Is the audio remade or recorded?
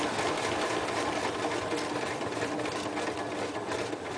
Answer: recorded